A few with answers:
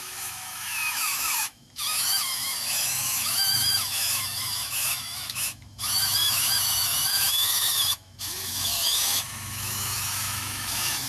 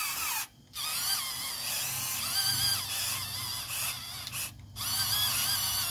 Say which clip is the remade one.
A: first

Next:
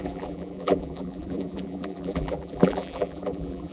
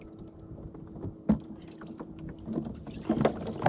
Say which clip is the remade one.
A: first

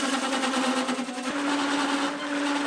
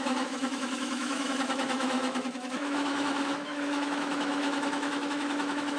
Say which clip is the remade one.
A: second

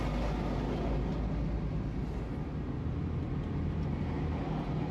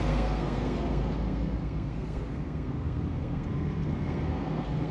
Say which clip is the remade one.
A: second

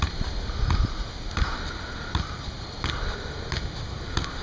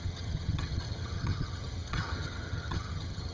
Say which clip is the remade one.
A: second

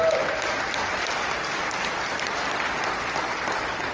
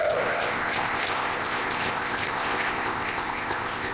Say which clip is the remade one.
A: second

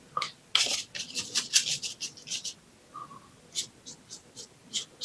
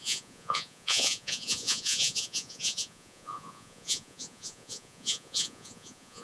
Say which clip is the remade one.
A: second